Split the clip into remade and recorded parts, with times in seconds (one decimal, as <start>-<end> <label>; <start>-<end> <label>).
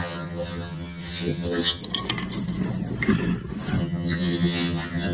0.0-1.8 remade; 1.8-3.8 recorded; 3.8-5.1 remade